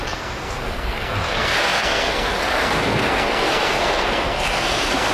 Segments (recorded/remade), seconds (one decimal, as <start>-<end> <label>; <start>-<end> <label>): 0.0-5.1 remade